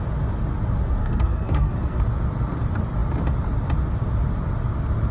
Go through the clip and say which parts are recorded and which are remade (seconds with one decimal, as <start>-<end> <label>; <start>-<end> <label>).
0.0-1.0 recorded; 1.0-2.0 remade; 2.0-5.1 recorded